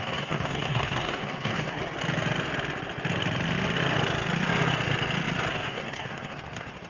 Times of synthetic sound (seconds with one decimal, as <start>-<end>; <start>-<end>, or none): 0.0-1.8; 5.5-6.9